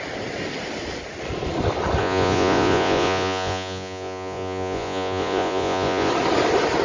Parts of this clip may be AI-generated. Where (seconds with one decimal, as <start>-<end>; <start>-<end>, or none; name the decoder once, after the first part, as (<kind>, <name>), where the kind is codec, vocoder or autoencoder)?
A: 2.0-6.1 (vocoder, Vocos)